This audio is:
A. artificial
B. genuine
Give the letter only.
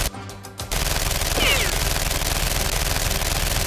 B